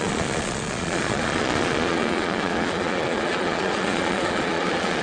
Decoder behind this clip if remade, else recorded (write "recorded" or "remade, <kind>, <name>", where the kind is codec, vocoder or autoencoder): remade, vocoder, Vocos